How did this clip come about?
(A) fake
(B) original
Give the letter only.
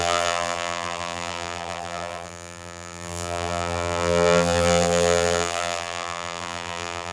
A